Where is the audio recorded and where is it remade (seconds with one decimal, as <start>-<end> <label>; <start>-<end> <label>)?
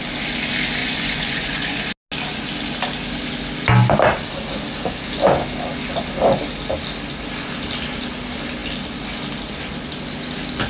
0.0-0.8 recorded; 0.8-1.8 remade; 1.8-10.7 recorded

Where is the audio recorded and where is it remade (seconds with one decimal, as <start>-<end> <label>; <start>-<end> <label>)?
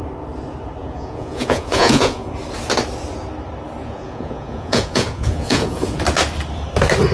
0.0-0.8 recorded; 0.8-2.3 remade; 2.3-3.8 recorded; 3.8-6.0 remade; 6.0-7.1 recorded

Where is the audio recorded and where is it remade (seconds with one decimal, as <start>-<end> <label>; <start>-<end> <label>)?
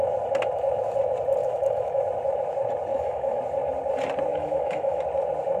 0.0-1.4 recorded; 1.4-2.0 remade; 2.0-2.9 recorded; 2.9-3.4 remade; 3.4-4.3 recorded; 4.3-5.0 remade; 5.0-5.6 recorded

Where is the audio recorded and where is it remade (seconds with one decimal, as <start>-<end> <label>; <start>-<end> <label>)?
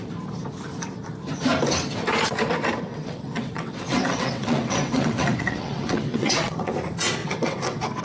0.0-2.9 recorded; 2.9-6.7 remade; 6.7-7.2 recorded; 7.2-8.0 remade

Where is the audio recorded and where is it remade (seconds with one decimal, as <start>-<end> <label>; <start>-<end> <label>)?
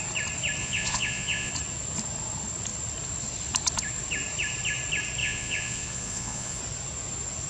0.0-0.6 recorded; 0.6-1.5 remade; 1.5-5.2 recorded; 5.2-6.6 remade; 6.6-7.5 recorded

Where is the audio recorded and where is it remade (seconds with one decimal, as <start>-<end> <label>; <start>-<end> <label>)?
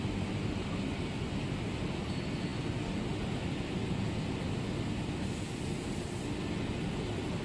0.0-7.4 recorded